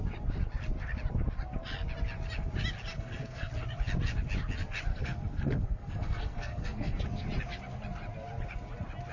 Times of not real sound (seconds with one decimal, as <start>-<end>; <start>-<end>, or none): 2.9-3.5; 4.9-7.0

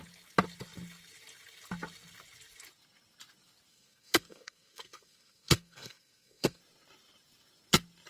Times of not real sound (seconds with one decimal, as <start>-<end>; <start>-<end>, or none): 3.7-6.6

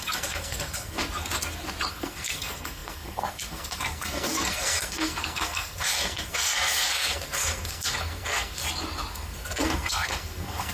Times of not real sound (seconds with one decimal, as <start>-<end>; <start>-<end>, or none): 0.0-1.0; 1.9-8.6; 9.1-10.7

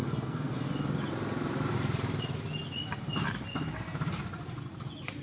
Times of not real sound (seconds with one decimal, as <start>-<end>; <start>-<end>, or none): 0.0-0.7